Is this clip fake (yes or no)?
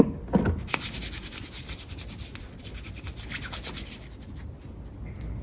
no